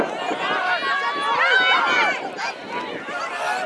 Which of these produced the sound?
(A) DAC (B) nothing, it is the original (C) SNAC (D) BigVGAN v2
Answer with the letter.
B